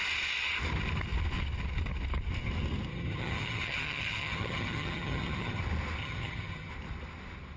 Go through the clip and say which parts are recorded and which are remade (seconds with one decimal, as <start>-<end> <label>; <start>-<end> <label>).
0.0-2.9 recorded; 2.9-5.6 remade; 5.6-6.0 recorded; 6.0-6.7 remade; 6.7-7.6 recorded